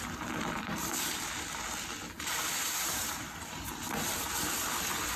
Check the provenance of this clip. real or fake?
fake